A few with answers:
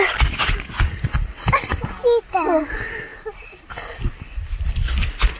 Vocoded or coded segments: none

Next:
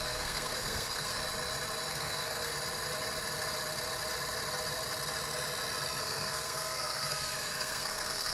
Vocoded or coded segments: 0.0-1.2 (codec, SNAC); 1.9-2.5; 6.0-8.3

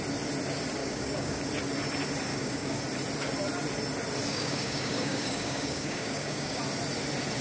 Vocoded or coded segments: 0.8-1.4 (codec, DAC); 2.3-2.8; 4.3-6.6

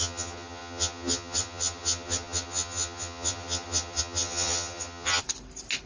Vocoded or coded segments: 0.0-5.2 (vocoder, HiFi-GAN)

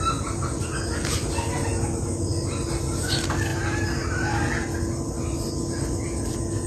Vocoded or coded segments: none